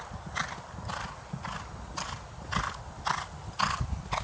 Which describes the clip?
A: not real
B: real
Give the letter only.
B